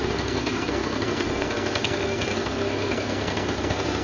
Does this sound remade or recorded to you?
remade